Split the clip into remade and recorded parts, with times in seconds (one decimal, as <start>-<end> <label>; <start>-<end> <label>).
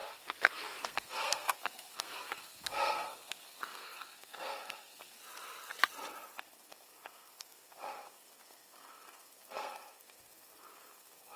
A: 0.0-5.2 remade; 5.2-6.4 recorded; 6.4-11.4 remade